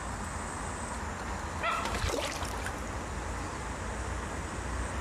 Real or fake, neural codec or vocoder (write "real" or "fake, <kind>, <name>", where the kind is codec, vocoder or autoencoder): real